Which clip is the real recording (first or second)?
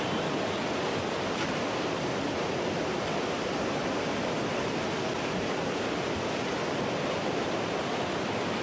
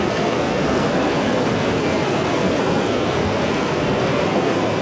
first